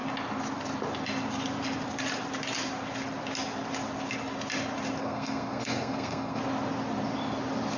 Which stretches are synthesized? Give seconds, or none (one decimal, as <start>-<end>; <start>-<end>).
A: 5.0-6.4